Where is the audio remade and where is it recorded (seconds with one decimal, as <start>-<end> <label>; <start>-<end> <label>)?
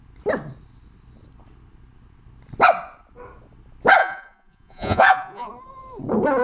0.0-4.0 recorded; 4.0-5.5 remade; 5.5-6.4 recorded